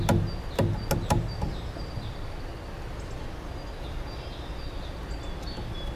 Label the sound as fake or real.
real